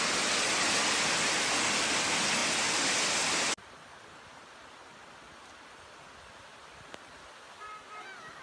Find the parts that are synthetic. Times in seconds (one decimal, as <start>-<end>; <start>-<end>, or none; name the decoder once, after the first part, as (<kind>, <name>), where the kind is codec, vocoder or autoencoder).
none